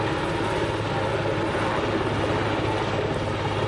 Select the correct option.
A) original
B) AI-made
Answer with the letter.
A